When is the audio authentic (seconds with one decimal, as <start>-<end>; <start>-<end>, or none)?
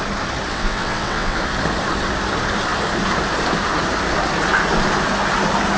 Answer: 0.0-0.5; 1.4-5.8